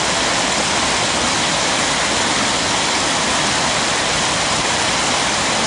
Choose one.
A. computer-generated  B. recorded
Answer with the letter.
B